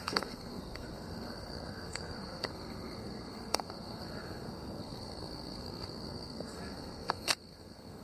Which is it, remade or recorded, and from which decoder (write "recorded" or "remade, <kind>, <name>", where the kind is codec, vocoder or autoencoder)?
remade, codec, SNAC